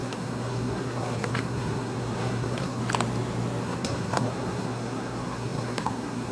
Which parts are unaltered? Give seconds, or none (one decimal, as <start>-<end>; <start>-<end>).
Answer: 2.8-3.6